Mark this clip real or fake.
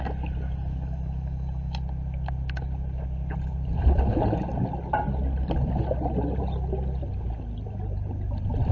real